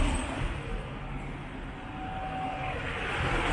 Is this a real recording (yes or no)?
yes